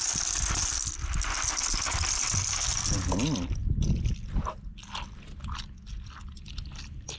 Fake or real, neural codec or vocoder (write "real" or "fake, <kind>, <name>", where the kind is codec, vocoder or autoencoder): real